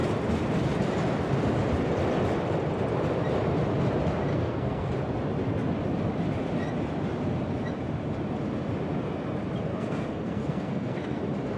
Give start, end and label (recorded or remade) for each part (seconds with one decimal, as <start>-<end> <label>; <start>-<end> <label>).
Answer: 0.0-4.3 recorded; 4.3-4.9 remade; 4.9-9.7 recorded; 9.7-11.2 remade; 11.2-11.6 recorded